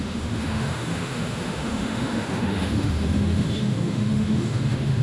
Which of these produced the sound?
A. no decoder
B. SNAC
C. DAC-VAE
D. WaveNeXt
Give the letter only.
C